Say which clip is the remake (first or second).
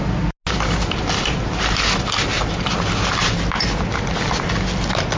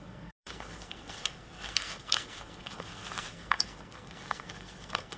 second